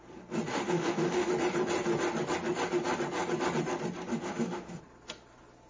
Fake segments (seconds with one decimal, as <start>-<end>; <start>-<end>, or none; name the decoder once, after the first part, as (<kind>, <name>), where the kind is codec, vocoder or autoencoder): 0.5-1.3 (autoencoder, DAC-VAE); 4.1-4.8